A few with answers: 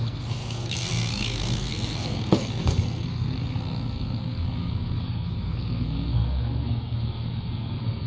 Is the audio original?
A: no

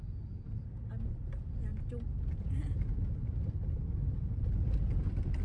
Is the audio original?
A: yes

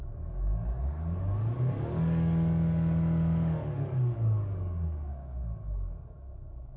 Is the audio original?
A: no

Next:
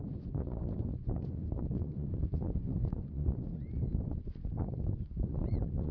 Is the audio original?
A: no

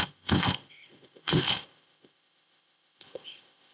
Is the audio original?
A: no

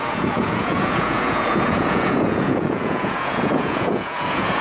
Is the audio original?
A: no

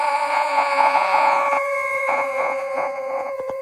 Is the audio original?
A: no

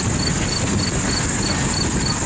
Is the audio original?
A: yes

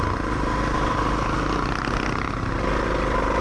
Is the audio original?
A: yes